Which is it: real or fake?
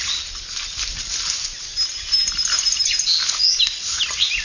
real